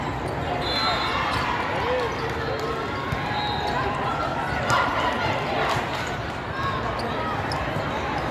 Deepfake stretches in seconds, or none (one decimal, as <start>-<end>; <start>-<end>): none